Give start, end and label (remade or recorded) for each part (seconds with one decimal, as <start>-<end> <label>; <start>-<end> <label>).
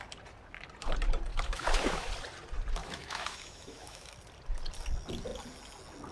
0.0-1.3 recorded; 1.3-2.1 remade; 2.1-2.8 recorded; 2.8-4.1 remade; 4.1-6.1 recorded